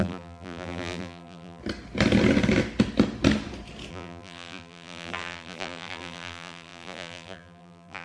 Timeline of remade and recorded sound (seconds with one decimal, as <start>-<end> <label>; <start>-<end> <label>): 0.0-1.6 remade; 1.6-3.9 recorded; 3.9-8.0 remade